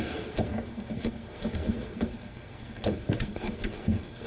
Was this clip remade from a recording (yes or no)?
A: yes